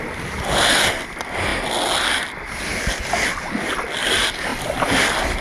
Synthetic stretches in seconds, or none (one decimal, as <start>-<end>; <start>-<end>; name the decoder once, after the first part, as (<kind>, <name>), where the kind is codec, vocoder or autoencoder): none